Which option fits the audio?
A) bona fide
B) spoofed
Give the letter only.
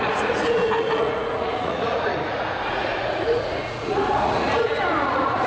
B